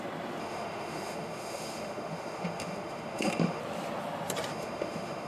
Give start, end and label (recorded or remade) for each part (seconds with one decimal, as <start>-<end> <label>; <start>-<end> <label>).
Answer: 0.0-0.4 recorded; 0.4-3.6 remade; 3.6-4.5 recorded; 4.5-5.3 remade